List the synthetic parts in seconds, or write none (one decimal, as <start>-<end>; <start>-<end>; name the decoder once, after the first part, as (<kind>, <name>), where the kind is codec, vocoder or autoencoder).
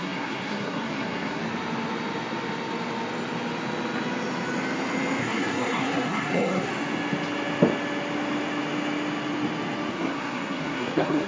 0.0-1.4 (codec, SNAC); 5.2-6.7; 9.9-11.3